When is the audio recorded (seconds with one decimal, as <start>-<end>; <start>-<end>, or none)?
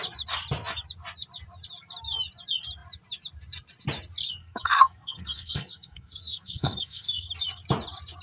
0.0-4.4; 7.3-8.2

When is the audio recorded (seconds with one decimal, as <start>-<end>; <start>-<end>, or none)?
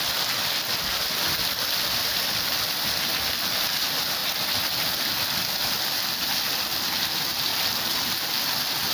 0.0-8.9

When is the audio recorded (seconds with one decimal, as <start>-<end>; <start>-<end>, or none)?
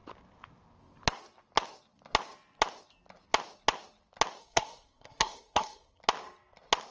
0.0-4.4; 6.0-6.9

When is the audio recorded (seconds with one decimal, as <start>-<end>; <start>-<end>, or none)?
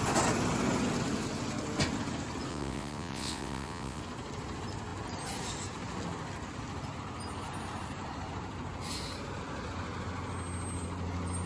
0.0-2.5; 4.0-11.5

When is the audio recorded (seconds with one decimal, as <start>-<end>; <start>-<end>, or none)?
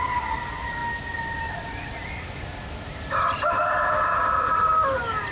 0.0-5.3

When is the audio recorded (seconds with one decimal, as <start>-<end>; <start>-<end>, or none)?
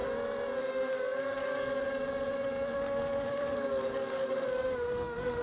0.0-0.6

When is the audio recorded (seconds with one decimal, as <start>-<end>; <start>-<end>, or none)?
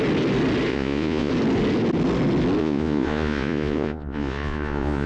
0.0-0.7; 1.3-2.6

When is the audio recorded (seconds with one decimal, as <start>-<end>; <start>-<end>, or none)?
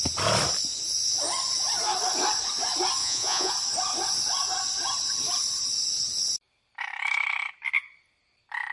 0.0-3.0; 3.5-8.7